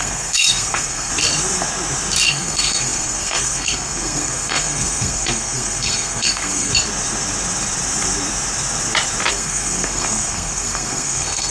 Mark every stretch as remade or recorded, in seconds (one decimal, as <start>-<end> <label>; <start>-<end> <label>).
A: 0.0-1.1 remade; 1.1-2.3 recorded; 2.3-6.7 remade; 6.7-9.3 recorded; 9.3-11.5 remade